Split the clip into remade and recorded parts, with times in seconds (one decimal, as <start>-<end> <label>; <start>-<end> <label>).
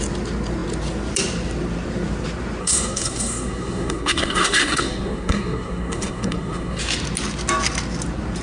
0.0-2.6 recorded; 2.6-6.8 remade; 6.8-8.4 recorded